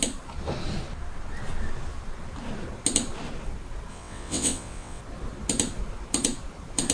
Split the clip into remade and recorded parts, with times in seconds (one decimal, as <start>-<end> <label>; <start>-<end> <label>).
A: 0.0-3.9 recorded; 3.9-5.0 remade; 5.0-6.9 recorded